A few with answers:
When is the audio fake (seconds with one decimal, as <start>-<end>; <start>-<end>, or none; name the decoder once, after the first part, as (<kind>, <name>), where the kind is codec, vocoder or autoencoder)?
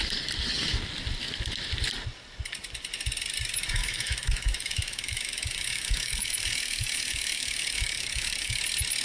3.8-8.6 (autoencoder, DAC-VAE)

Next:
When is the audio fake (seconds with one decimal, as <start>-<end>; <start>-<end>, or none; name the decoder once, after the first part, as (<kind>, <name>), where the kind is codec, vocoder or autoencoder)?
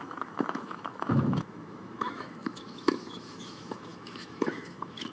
0.0-5.1 (autoencoder, DAC-VAE)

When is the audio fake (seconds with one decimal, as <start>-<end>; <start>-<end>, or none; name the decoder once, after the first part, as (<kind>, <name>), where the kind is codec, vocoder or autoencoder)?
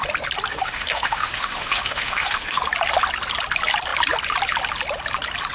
0.5-2.6 (autoencoder, DAC-VAE)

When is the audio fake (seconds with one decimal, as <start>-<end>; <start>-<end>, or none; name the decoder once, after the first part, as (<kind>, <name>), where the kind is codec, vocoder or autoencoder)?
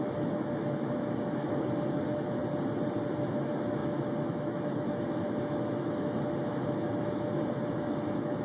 0.0-2.4 (autoencoder, DAC-VAE); 3.1-8.4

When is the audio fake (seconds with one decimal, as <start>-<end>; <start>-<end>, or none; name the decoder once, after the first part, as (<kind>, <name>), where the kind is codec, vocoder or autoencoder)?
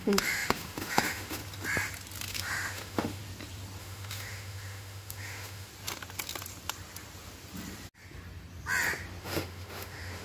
0.0-1.4 (autoencoder, DAC-VAE); 2.3-3.2; 3.8-5.7; 9.2-10.2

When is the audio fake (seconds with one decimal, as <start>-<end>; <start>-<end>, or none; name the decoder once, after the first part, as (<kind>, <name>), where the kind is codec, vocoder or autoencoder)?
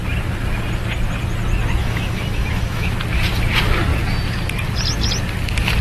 1.8-2.9 (autoencoder, DAC-VAE)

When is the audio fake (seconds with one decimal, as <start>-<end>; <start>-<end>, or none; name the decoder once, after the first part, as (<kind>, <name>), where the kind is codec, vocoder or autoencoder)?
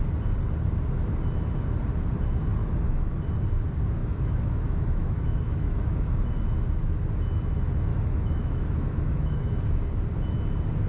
2.6-3.1 (autoencoder, DAC-VAE); 4.0-6.3; 7.9-9.5